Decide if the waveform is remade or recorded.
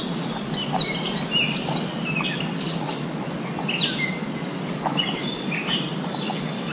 recorded